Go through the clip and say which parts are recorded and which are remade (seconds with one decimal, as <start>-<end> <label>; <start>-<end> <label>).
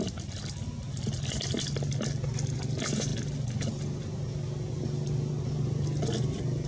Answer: 0.0-6.7 recorded